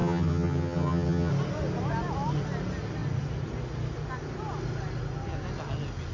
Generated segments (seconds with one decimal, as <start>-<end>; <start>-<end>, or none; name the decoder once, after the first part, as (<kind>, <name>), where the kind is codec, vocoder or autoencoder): 0.0-1.3 (vocoder, HiFi-GAN)